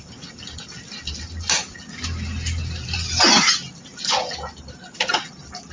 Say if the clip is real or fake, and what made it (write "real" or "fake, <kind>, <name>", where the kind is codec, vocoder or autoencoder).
real